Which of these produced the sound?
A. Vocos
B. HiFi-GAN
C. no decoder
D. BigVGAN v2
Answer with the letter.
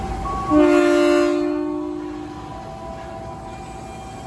C